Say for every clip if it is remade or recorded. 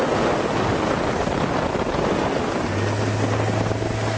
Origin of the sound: recorded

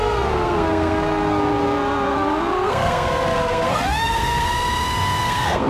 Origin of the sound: remade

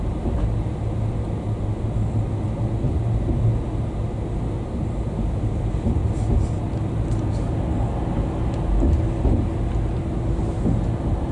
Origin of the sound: recorded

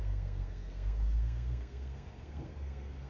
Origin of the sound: remade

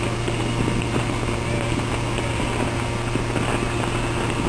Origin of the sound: recorded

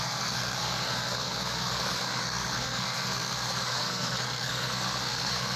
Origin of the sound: remade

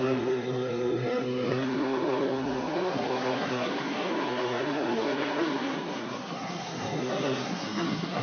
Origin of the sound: remade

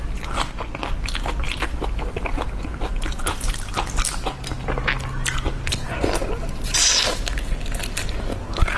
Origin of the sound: recorded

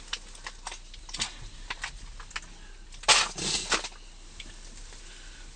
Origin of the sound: recorded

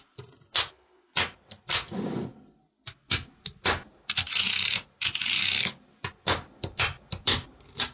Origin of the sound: recorded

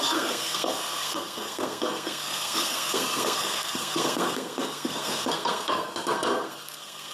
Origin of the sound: remade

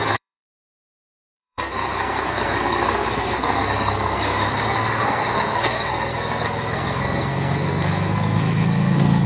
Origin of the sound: remade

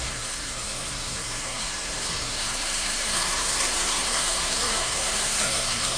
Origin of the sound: remade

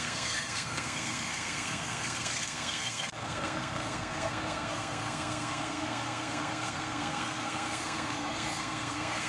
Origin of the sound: remade